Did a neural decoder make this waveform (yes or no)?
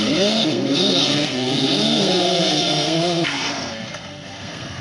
yes